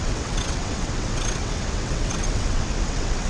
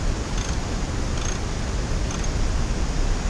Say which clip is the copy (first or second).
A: first